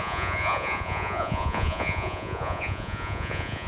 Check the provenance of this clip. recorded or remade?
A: remade